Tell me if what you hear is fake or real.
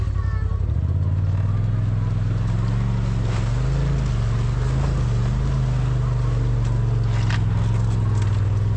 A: real